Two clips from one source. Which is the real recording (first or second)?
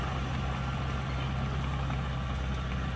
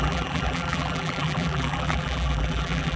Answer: first